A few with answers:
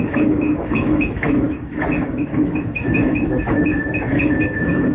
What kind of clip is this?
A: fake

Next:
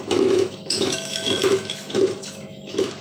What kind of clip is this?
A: fake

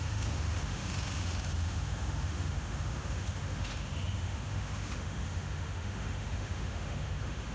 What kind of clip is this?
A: fake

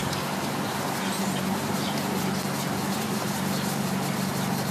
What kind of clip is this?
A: real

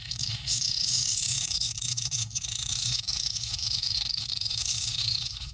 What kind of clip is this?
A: fake